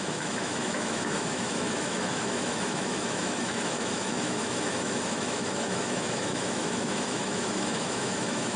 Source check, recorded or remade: remade